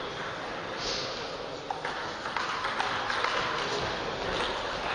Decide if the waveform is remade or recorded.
recorded